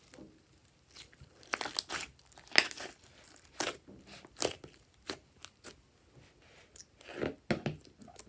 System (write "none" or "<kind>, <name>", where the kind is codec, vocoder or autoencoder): none